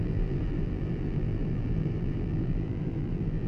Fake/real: fake